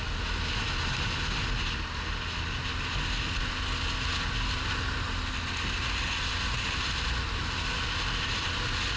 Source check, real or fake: real